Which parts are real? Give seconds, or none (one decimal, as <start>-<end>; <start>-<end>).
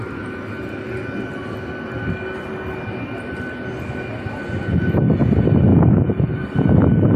0.0-5.7; 6.3-7.2